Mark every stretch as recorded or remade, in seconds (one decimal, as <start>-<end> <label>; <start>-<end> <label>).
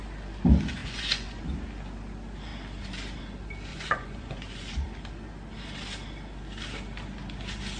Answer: 0.0-0.8 recorded; 0.8-1.4 remade; 1.4-3.7 recorded; 3.7-4.7 remade; 4.7-7.8 recorded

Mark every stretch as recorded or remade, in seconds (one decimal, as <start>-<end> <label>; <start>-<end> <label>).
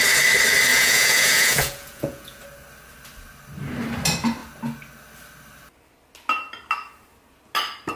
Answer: 0.0-0.7 recorded; 0.7-2.4 remade; 2.4-8.0 recorded